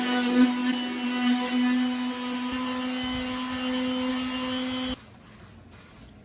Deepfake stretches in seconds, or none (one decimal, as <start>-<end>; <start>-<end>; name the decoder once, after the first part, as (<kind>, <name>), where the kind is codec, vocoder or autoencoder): none